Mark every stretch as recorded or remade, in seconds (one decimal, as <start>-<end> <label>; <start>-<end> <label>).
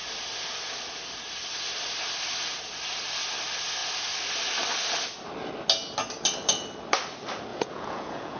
0.0-7.5 recorded; 7.5-8.4 remade